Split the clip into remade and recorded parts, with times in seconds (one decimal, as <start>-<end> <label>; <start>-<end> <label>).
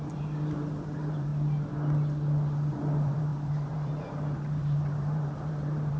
0.0-1.3 remade; 1.3-2.7 recorded; 2.7-6.0 remade